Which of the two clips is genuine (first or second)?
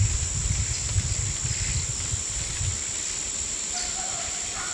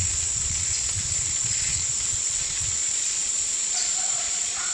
first